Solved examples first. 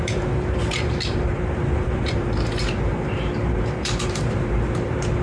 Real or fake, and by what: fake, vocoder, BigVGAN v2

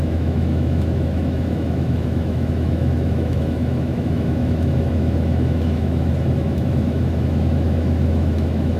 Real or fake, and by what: fake, autoencoder, DAC-VAE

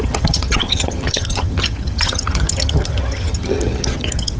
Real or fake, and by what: fake, vocoder, HiFi-GAN